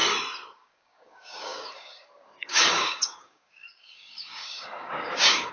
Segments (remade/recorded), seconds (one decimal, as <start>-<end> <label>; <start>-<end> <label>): 0.0-0.6 recorded; 0.6-5.5 remade